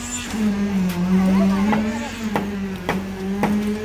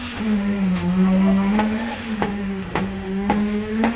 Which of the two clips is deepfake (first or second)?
second